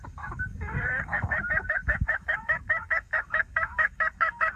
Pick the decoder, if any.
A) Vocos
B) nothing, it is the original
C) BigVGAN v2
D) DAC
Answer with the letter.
D